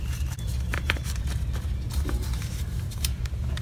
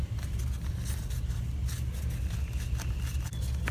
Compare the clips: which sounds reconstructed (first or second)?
first